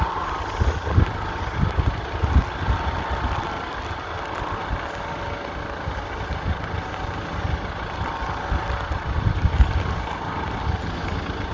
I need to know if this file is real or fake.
real